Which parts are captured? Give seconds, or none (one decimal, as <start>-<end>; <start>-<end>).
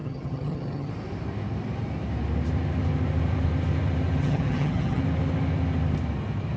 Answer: 0.9-4.2; 5.0-6.6